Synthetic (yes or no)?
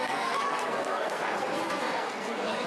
yes